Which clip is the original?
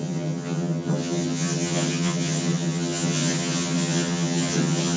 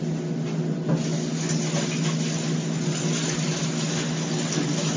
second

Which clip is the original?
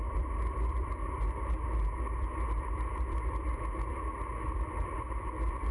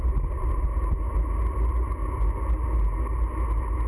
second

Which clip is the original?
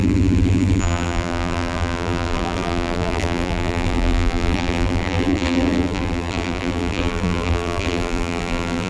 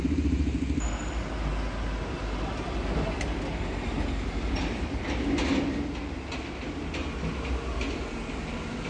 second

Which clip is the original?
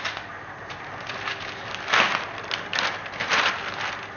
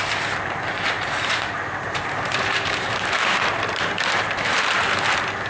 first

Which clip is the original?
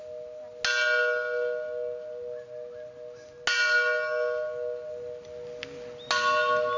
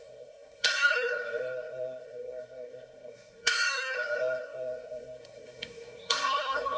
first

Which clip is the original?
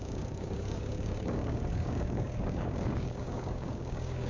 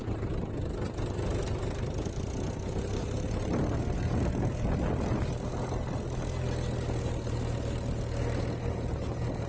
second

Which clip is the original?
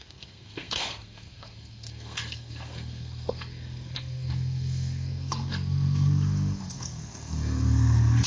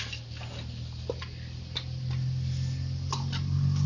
second